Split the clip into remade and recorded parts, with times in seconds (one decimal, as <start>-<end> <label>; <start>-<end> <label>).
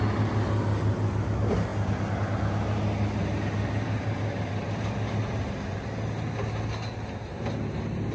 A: 0.0-8.1 recorded